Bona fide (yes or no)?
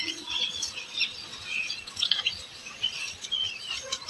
no